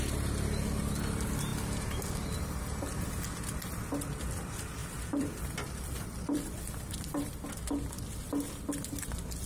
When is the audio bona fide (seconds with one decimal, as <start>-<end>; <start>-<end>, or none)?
0.0-4.8; 7.3-9.5